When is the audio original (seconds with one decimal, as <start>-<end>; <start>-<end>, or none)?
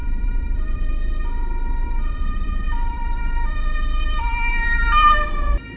0.9-1.8; 5.3-5.8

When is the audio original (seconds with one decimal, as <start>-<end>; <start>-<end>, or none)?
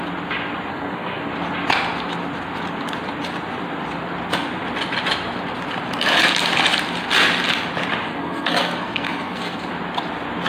0.0-0.7; 1.3-8.1; 9.7-10.5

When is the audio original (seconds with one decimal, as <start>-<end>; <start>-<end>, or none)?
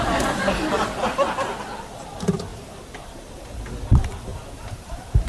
0.0-2.5; 3.4-4.3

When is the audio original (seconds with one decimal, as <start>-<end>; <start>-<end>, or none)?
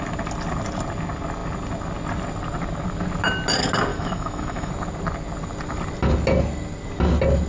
0.0-3.9; 4.7-7.5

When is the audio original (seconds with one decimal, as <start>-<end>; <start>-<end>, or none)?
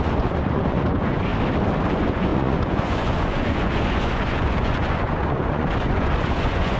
1.3-1.9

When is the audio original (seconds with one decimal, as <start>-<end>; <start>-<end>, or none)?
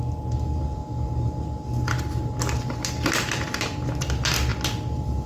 0.0-5.3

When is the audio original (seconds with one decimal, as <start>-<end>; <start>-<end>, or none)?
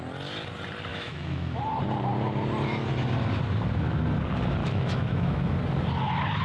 0.0-0.9; 1.6-4.6; 5.5-6.4